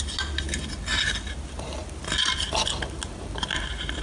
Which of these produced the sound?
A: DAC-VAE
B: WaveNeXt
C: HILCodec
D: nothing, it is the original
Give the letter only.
D